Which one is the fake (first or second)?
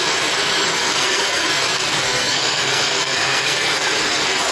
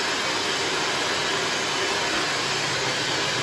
first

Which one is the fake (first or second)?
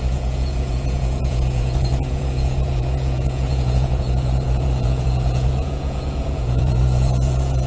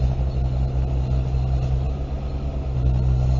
first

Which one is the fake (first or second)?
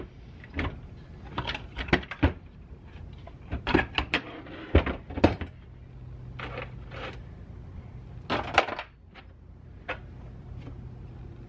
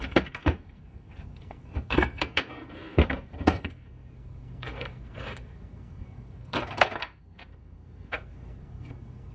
second